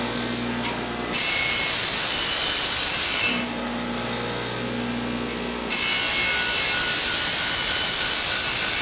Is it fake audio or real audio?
real